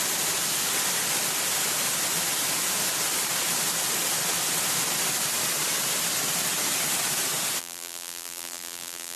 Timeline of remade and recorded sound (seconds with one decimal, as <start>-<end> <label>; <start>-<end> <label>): 0.0-7.6 recorded; 7.6-9.2 remade